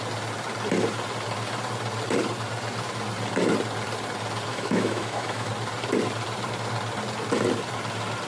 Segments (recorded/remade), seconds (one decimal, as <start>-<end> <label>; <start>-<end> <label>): 0.0-4.5 recorded; 4.5-5.5 remade; 5.5-8.3 recorded